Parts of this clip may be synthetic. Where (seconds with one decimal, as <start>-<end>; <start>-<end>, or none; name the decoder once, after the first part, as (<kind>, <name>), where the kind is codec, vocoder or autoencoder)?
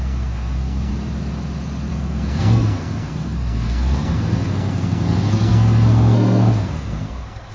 0.0-0.9 (codec, SNAC); 1.9-7.5